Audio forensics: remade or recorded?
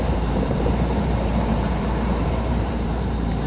remade